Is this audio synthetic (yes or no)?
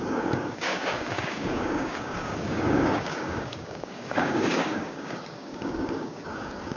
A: yes